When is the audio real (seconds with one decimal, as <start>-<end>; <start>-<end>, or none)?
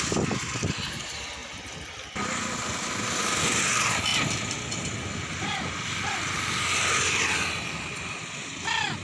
0.0-9.0